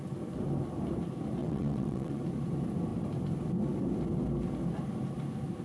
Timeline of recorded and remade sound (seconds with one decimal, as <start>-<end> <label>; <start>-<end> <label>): 0.0-1.4 recorded; 1.4-2.2 remade; 2.2-5.6 recorded